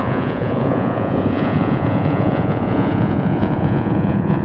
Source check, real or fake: fake